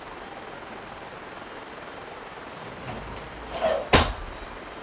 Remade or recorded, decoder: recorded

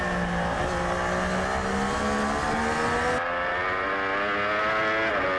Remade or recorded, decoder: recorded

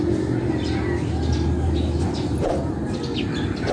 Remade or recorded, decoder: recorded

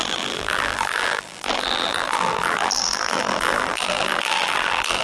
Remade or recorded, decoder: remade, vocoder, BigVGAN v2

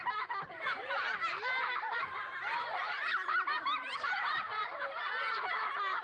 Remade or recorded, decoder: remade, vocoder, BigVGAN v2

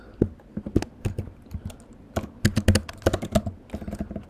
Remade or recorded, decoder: recorded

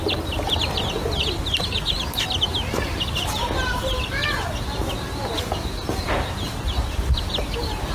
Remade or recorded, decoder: recorded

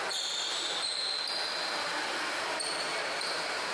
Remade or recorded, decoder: recorded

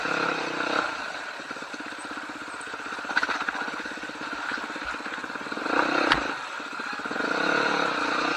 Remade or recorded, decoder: recorded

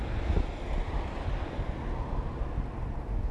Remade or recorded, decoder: recorded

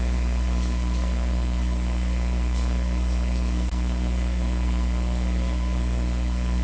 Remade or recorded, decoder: remade, codec, SNAC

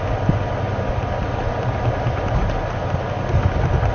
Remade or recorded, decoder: recorded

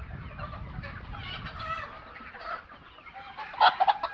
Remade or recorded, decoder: recorded